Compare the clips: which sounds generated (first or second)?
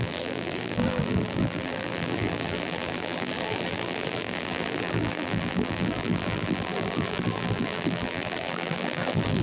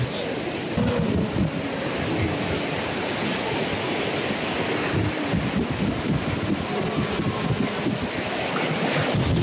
first